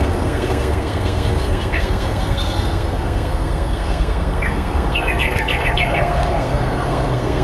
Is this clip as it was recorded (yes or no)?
no